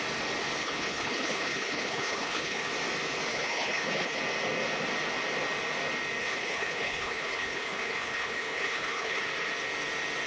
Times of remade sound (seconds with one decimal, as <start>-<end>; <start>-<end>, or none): 0.6-2.7; 3.3-4.2; 6.2-9.2